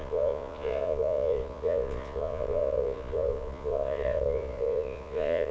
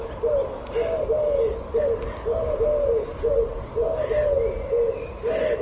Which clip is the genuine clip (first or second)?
second